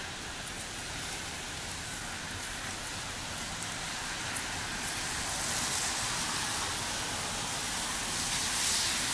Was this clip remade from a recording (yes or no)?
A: no